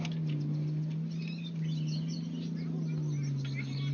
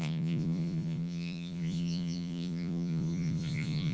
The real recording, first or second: first